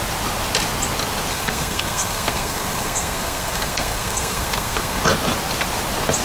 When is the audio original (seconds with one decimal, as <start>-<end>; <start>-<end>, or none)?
0.0-1.3; 5.0-6.2